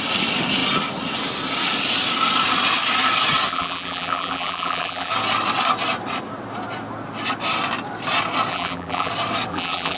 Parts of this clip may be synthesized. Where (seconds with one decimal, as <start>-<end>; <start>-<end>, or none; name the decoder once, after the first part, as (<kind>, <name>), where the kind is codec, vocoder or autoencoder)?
3.5-5.1 (vocoder, BigVGAN v2); 8.5-9.1; 9.5-10.0